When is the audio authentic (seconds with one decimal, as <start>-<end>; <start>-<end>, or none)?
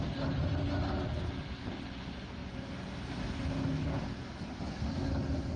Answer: 0.0-5.6